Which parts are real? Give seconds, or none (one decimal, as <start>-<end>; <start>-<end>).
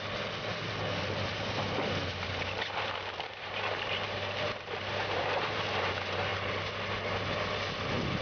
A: 0.0-1.3; 5.4-8.2